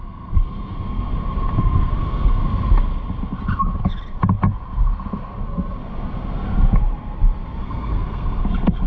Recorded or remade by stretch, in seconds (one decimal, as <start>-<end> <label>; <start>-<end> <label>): 0.0-1.1 remade; 1.1-1.6 recorded; 1.6-2.4 remade; 2.4-7.6 recorded; 7.6-8.9 remade